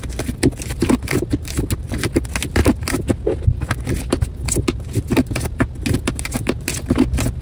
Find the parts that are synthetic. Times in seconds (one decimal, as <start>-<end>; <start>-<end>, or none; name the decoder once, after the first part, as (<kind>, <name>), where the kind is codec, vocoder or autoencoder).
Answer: none